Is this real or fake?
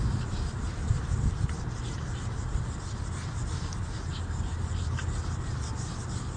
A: fake